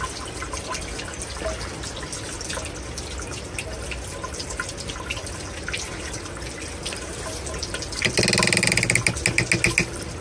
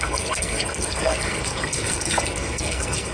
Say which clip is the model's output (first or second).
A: second